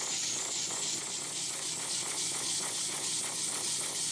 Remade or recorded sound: remade